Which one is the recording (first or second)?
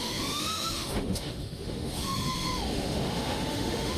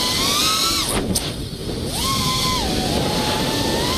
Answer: second